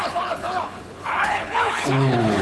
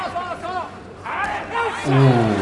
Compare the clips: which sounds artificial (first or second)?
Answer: first